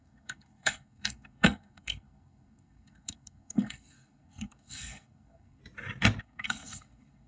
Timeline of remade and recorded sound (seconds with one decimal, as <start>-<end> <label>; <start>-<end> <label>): 0.0-5.6 remade; 5.6-6.2 recorded; 6.2-7.3 remade